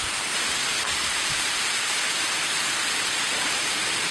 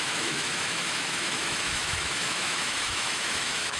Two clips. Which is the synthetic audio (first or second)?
second